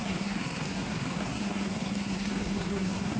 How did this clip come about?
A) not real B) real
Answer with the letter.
A